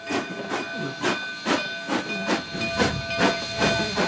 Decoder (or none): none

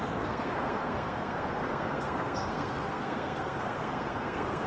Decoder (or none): codec, SNAC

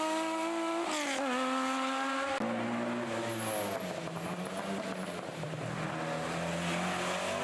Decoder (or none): none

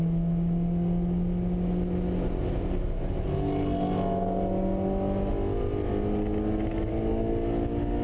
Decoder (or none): none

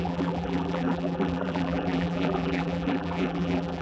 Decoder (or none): vocoder, BigVGAN v2